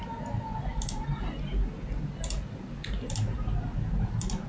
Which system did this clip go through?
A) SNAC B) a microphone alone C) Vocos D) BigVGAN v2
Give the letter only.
B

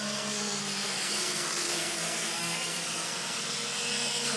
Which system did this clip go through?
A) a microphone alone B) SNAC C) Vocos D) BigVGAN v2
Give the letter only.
B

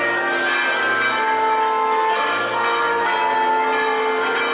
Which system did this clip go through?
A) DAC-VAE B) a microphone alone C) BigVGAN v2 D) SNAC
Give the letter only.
B